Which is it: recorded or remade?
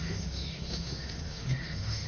remade